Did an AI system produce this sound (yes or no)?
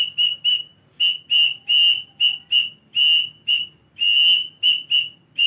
no